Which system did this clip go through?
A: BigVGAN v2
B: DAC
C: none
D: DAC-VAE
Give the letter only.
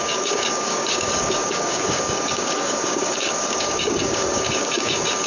B